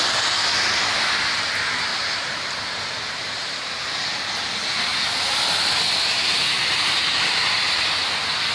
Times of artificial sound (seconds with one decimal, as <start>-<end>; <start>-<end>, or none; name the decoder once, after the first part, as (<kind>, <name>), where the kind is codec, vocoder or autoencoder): 1.9-3.3 (vocoder, BigVGAN v2); 6.3-7.5